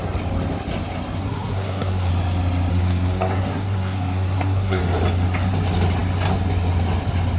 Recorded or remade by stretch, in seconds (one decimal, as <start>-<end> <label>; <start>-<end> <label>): 0.0-1.2 recorded; 1.2-2.1 remade; 2.1-2.7 recorded; 2.7-4.8 remade; 4.8-7.4 recorded